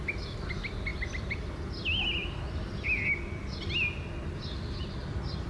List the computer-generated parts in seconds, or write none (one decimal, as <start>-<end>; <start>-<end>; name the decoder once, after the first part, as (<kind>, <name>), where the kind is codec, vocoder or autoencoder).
none